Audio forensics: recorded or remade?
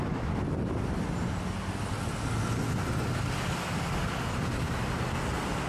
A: recorded